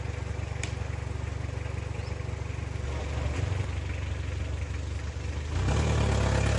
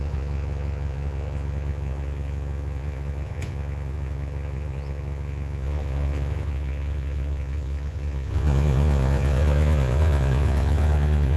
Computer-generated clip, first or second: second